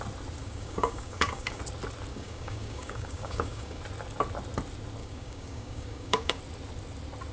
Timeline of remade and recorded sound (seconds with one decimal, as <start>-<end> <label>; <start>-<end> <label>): 0.0-0.4 recorded; 0.4-1.6 remade; 1.6-2.1 recorded; 2.1-3.8 remade; 3.8-5.0 recorded; 5.0-6.4 remade; 6.4-7.3 recorded